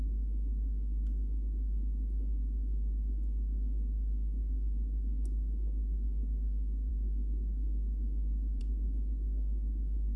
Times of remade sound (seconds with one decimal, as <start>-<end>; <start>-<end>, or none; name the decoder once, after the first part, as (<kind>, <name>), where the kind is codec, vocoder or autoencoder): none